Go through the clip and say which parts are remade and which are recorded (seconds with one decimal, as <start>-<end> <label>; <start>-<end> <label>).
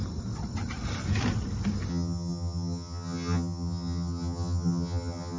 0.0-1.9 recorded; 1.9-5.4 remade